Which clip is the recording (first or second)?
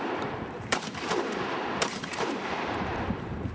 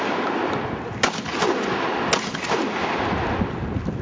second